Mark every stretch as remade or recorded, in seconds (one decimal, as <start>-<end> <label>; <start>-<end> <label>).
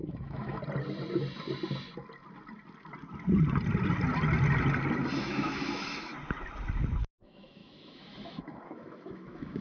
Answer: 0.0-0.6 remade; 0.6-5.2 recorded; 5.2-6.1 remade; 6.1-7.0 recorded; 7.0-9.6 remade